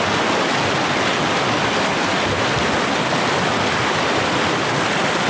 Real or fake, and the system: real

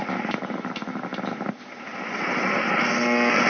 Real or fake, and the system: real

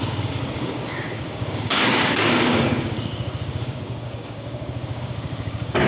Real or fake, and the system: fake, codec, DAC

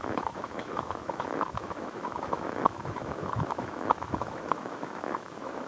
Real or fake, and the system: fake, autoencoder, DAC-VAE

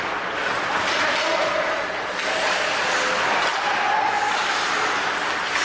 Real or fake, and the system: real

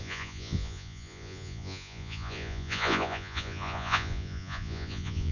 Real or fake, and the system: fake, vocoder, Vocos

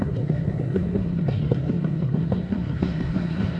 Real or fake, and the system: fake, codec, SNAC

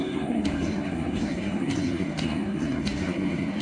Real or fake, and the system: fake, codec, SNAC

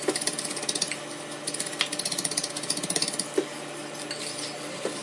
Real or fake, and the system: real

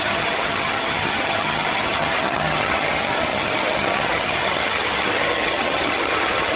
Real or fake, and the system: fake, vocoder, HiFi-GAN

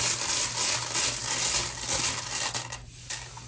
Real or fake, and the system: real